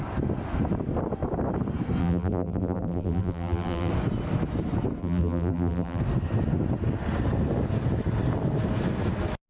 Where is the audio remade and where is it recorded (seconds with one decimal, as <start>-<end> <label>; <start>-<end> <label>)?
0.0-2.0 recorded; 2.0-3.9 remade; 3.9-5.0 recorded; 5.0-6.0 remade; 6.0-9.5 recorded